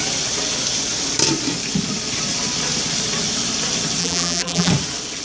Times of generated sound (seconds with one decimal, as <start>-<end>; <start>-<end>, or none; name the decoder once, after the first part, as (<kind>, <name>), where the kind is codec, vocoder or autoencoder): 4.0-4.7 (vocoder, BigVGAN v2)